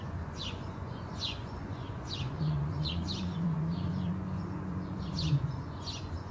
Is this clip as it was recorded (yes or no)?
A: no